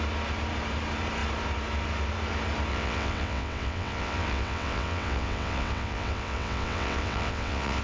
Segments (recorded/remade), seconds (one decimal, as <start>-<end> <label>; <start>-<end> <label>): 0.0-2.7 recorded; 2.7-7.8 remade